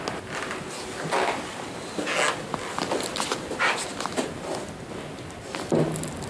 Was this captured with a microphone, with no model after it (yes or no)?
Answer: yes